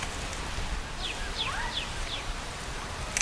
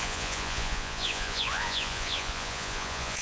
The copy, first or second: second